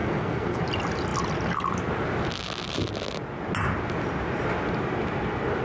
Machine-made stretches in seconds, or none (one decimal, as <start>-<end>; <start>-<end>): 0.0-0.6

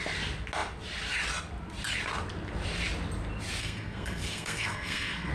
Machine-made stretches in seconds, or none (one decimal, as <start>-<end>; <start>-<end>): 3.6-5.3

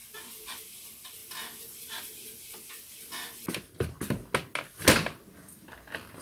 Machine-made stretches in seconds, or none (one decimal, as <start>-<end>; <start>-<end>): none